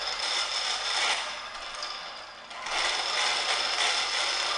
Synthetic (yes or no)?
no